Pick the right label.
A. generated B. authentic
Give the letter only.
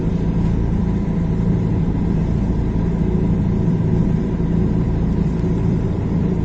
A